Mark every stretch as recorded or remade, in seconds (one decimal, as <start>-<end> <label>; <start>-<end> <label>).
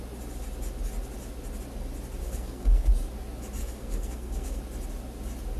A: 0.0-2.2 recorded; 2.2-2.9 remade; 2.9-3.6 recorded; 3.6-4.6 remade; 4.6-5.6 recorded